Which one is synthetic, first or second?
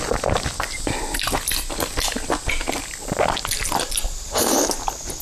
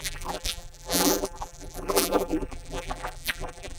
second